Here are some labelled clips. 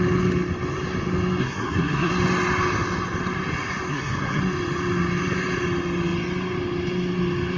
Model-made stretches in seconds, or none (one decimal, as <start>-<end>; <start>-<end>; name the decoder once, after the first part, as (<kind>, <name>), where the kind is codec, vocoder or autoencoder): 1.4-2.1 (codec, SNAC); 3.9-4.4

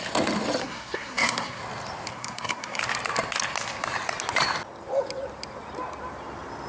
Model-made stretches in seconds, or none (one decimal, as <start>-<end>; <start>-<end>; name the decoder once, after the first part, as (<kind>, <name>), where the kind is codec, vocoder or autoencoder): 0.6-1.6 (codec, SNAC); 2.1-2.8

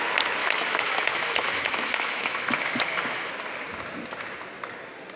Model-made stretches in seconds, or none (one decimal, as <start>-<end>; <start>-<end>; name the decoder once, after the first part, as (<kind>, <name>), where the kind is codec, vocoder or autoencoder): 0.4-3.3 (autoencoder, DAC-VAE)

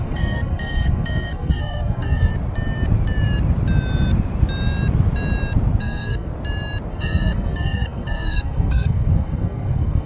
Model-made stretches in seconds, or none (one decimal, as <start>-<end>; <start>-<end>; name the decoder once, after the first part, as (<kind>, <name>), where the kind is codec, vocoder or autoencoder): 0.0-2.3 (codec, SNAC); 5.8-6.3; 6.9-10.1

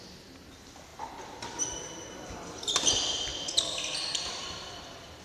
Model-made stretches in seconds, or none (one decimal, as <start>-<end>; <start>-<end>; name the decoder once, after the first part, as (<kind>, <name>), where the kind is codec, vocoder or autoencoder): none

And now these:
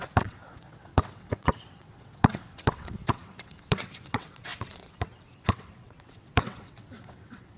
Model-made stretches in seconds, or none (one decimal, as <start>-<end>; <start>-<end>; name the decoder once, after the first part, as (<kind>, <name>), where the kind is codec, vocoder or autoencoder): 0.0-7.6 (vocoder, WaveNeXt)

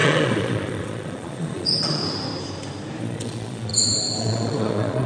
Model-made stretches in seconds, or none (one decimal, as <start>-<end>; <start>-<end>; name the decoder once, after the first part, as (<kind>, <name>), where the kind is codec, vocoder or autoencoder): 0.0-2.0 (vocoder, Vocos); 3.0-3.7; 4.2-5.1

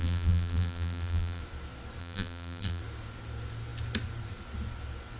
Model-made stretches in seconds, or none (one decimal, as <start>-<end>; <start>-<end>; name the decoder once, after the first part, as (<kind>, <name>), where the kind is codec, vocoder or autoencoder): 0.0-1.4 (vocoder, BigVGAN v2); 2.0-2.8